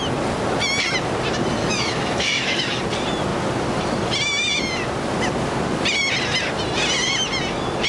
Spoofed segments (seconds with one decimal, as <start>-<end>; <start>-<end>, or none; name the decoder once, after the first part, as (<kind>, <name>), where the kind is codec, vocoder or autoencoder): 1.6-2.8 (autoencoder, DAC-VAE)